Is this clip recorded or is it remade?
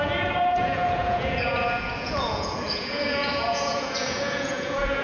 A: remade